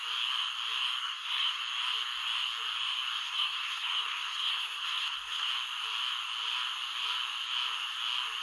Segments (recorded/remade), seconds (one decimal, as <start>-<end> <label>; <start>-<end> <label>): 0.0-1.0 recorded; 1.0-1.6 remade; 1.6-3.2 recorded; 3.2-5.5 remade; 5.5-8.4 recorded